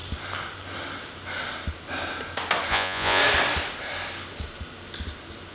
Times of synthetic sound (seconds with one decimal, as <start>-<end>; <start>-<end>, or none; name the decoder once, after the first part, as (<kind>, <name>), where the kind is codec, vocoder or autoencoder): 2.7-3.2 (vocoder, Vocos)